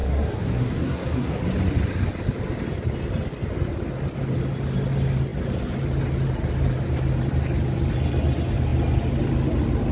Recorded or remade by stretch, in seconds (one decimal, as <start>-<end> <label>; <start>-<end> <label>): 0.0-1.4 remade; 1.4-9.9 recorded